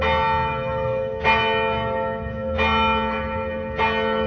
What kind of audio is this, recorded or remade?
recorded